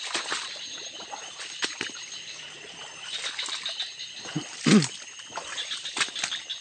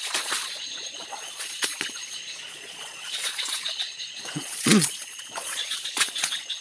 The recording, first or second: first